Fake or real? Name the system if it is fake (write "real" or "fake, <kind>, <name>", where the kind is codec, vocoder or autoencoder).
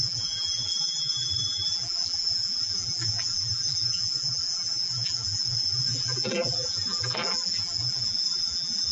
fake, vocoder, BigVGAN v2